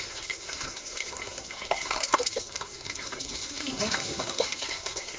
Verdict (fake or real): fake